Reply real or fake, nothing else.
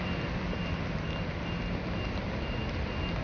real